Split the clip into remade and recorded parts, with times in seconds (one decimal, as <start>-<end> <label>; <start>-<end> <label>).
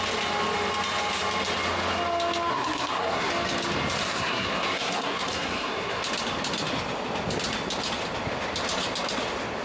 0.0-2.5 recorded; 2.5-3.3 remade; 3.3-4.0 recorded; 4.0-6.0 remade; 6.0-9.6 recorded